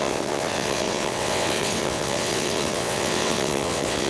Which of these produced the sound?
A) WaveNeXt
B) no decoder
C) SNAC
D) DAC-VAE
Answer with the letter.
A